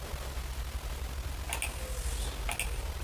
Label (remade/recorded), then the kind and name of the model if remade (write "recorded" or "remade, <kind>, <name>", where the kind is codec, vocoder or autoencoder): recorded